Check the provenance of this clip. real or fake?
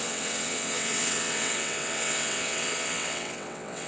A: fake